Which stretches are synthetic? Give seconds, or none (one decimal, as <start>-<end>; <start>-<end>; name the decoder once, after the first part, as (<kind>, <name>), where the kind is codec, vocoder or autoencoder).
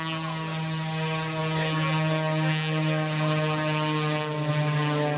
none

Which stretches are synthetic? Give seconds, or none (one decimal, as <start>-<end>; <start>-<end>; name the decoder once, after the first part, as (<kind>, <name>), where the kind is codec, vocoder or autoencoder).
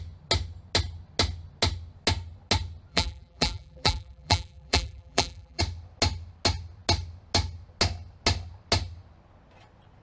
2.9-5.6 (vocoder, BigVGAN v2)